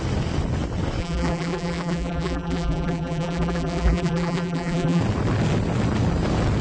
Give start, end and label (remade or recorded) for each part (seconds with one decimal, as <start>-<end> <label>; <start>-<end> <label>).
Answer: 0.0-1.0 recorded; 1.0-5.0 remade; 5.0-6.6 recorded